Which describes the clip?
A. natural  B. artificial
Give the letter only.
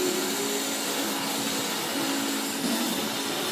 A